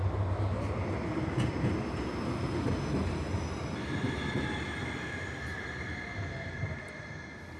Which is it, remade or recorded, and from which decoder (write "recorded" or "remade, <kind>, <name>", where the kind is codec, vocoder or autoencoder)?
recorded